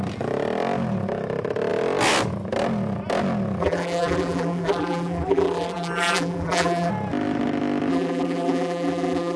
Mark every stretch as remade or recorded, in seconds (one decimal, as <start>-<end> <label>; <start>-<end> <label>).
0.0-3.6 recorded; 3.6-6.9 remade; 6.9-7.9 recorded; 7.9-9.4 remade